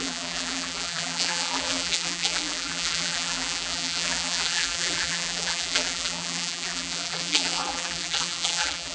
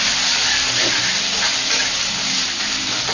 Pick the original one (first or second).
second